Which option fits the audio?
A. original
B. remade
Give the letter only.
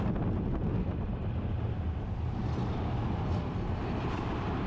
A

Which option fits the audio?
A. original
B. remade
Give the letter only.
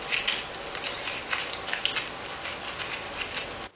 A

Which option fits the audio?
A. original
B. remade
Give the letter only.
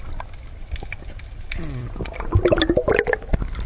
A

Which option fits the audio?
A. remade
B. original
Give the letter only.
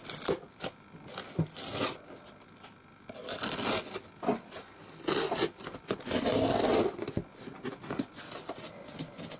B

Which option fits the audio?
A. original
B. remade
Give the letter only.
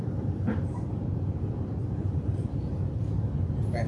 B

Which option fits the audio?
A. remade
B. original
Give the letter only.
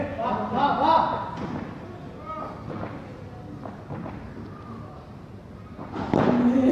B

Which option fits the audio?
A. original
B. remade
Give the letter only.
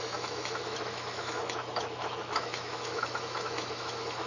B